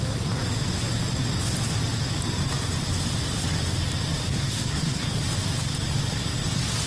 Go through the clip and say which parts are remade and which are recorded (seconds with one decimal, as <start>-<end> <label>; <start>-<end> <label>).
0.0-4.3 recorded; 4.3-5.2 remade; 5.2-6.9 recorded